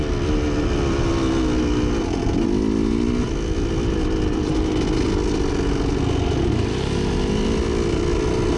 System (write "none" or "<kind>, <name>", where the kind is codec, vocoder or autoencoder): none